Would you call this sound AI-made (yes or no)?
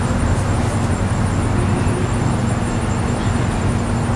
no